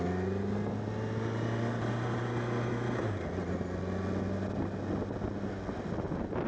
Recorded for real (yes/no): yes